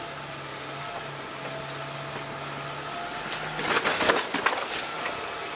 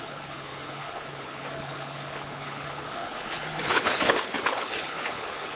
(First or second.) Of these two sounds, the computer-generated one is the second